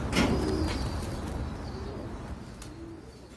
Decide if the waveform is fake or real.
real